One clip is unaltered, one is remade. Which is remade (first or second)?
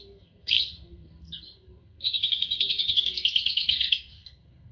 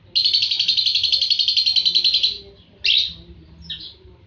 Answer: first